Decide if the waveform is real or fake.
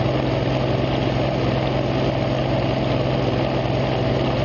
real